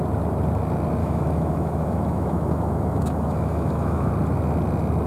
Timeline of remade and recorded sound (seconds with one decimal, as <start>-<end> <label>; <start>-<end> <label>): 0.0-1.0 recorded; 1.0-4.1 remade; 4.1-5.1 recorded